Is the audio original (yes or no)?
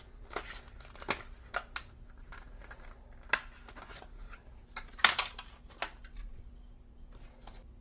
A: yes